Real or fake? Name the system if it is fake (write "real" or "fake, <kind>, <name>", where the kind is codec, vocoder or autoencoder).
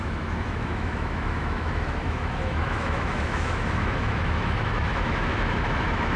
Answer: fake, autoencoder, DAC-VAE